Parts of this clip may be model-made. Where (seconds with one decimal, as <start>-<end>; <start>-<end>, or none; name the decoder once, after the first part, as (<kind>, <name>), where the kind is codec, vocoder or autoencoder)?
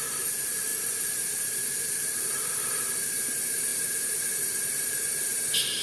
0.0-5.8 (vocoder, BigVGAN v2)